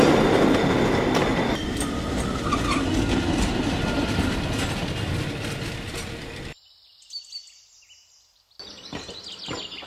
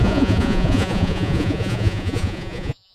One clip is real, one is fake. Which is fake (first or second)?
second